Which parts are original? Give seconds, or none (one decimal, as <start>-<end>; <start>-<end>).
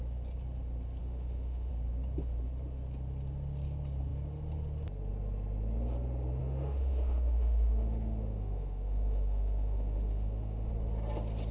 0.0-1.0; 1.7-6.4; 10.7-11.5